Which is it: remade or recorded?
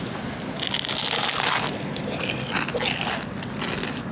recorded